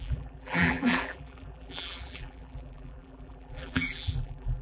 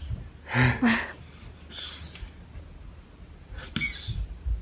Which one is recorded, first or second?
second